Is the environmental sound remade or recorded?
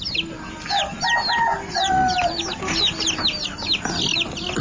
recorded